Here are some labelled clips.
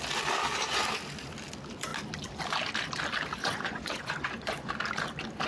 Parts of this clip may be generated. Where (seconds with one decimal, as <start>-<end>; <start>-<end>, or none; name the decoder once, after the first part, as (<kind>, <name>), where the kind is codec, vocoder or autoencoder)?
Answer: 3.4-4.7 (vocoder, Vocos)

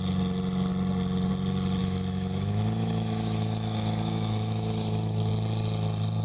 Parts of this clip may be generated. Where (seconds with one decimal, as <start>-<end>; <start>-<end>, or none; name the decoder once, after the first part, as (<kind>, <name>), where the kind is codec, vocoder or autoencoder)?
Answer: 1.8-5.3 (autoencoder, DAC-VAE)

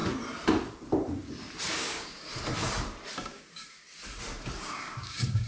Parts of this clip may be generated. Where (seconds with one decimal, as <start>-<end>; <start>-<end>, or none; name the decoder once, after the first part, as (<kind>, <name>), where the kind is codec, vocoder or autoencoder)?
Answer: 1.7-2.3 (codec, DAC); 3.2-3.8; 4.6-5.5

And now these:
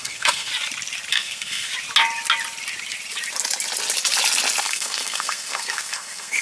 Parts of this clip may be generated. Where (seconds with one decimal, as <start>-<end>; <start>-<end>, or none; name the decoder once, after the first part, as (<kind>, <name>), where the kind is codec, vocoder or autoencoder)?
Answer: 0.0-0.5 (codec, SNAC); 1.1-1.7; 4.6-6.4